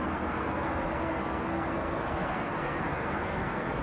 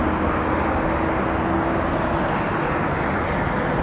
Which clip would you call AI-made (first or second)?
first